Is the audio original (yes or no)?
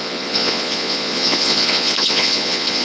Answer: no